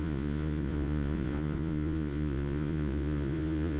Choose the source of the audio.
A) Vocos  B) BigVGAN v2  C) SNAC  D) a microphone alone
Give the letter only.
A